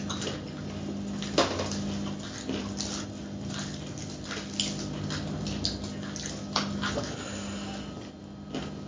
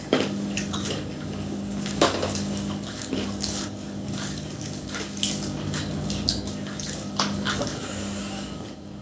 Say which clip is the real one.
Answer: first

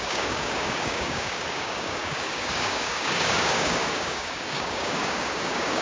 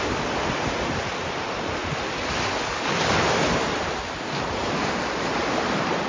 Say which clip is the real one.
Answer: second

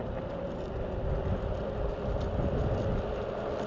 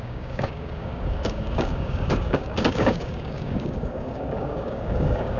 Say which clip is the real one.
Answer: first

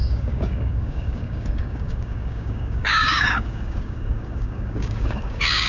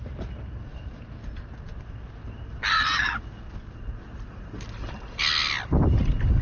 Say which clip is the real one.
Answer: second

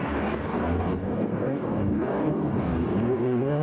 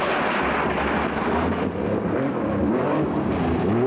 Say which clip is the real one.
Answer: second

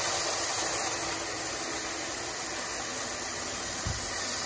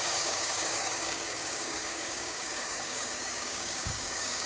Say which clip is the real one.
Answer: first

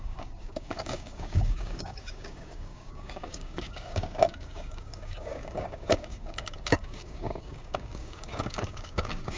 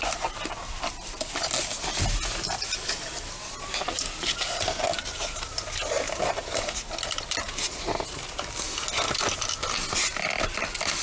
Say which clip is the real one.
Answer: second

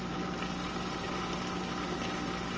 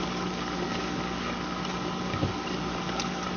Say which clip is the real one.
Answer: first